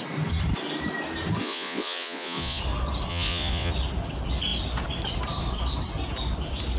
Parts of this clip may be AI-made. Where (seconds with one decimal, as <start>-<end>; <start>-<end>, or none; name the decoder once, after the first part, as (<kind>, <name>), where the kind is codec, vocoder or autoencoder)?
1.4-2.6 (vocoder, Vocos); 3.1-3.7